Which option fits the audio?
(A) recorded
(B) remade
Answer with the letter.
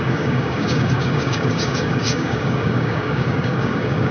B